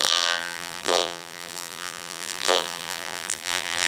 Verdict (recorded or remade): remade